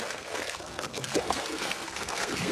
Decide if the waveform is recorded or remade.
remade